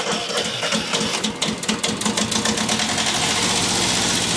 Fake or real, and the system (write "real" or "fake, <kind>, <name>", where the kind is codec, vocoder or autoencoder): real